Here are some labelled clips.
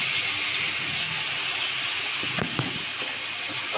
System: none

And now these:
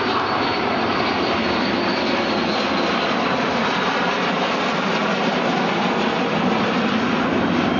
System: none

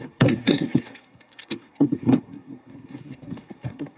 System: codec, SNAC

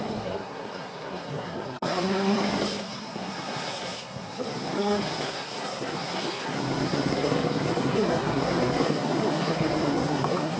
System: codec, SNAC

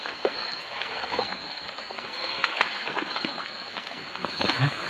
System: codec, SNAC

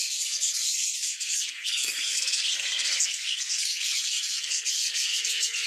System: codec, SNAC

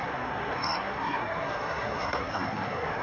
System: codec, SNAC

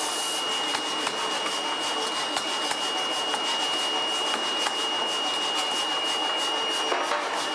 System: none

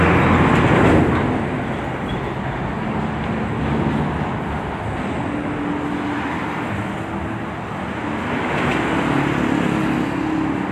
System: none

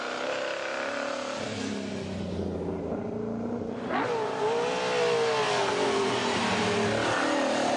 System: none